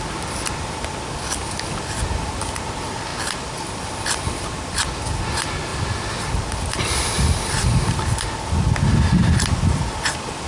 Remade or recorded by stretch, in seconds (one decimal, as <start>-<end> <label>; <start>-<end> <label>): 0.0-10.5 recorded